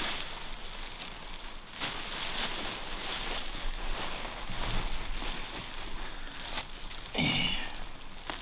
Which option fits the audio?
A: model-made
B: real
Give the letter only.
B